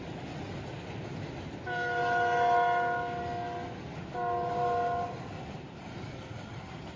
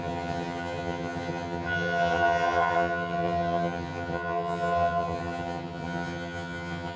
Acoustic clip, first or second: first